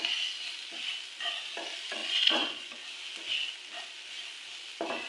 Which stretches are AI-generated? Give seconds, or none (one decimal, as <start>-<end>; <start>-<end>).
2.0-2.7